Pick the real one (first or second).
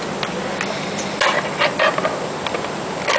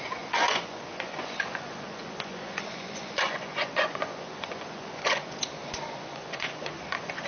first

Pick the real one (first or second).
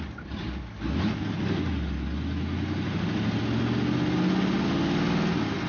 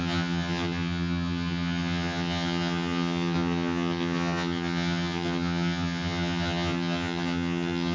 first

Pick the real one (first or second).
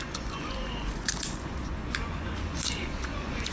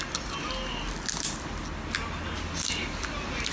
second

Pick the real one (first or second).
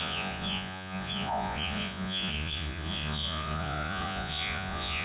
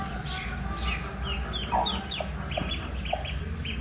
second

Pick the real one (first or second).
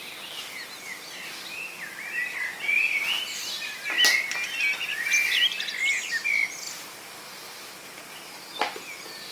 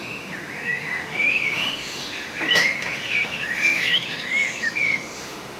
first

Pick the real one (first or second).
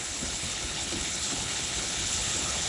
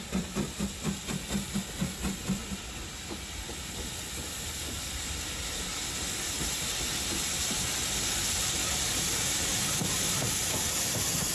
second